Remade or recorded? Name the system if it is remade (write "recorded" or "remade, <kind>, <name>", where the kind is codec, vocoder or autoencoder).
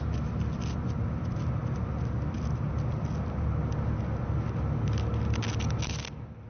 recorded